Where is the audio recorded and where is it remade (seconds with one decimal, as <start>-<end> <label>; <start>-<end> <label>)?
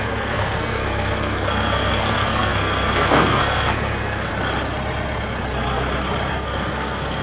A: 0.0-4.3 remade; 4.3-6.3 recorded; 6.3-7.2 remade